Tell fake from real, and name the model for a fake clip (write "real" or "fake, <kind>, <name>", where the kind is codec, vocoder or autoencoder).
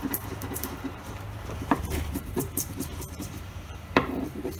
fake, vocoder, BigVGAN v2